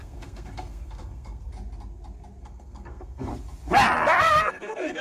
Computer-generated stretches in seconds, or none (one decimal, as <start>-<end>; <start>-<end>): 0.0-1.5; 2.4-3.3; 4.2-5.0